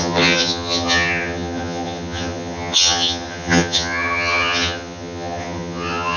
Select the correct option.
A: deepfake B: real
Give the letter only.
A